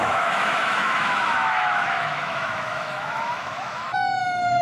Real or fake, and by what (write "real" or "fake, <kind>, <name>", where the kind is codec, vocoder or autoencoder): fake, autoencoder, DAC-VAE